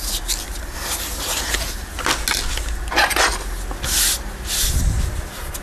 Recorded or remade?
recorded